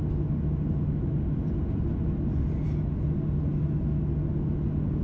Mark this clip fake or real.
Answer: real